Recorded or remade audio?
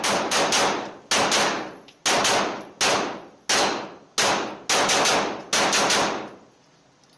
recorded